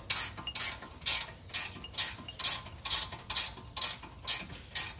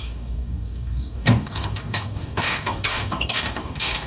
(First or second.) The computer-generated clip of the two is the second